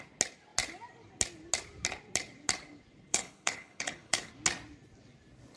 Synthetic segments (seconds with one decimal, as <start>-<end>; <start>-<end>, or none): 3.1-4.3